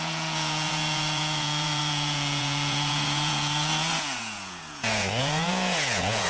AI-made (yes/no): yes